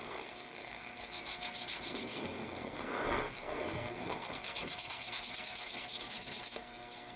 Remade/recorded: remade